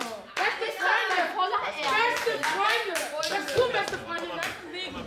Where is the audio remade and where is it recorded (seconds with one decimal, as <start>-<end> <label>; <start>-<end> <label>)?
0.0-4.4 remade; 4.4-5.1 recorded